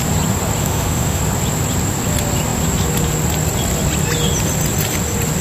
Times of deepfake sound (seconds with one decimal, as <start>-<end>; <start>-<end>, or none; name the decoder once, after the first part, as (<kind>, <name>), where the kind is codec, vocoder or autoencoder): 0.6-1.2 (autoencoder, DAC-VAE)